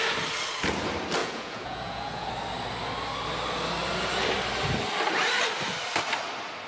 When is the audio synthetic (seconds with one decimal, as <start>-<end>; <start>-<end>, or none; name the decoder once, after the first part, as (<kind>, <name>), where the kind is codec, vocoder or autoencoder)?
1.2-2.3 (vocoder, Vocos)